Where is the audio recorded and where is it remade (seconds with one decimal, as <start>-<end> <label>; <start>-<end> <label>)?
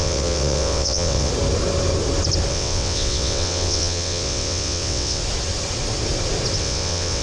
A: 0.0-1.3 remade; 1.3-2.5 recorded; 2.5-5.2 remade; 5.2-6.6 recorded; 6.6-7.2 remade